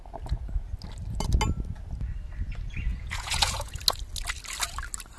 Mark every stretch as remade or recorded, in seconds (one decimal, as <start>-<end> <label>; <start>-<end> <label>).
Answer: 0.0-2.9 recorded; 2.9-3.8 remade; 3.8-5.2 recorded